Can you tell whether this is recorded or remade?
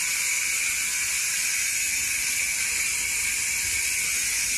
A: recorded